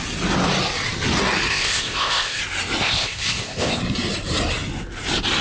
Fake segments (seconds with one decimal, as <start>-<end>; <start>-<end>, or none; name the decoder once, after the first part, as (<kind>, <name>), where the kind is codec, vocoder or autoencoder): 1.5-2.4 (codec, ZipCodec); 2.8-3.8